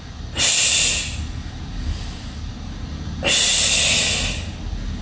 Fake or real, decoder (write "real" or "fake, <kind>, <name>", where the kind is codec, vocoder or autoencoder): real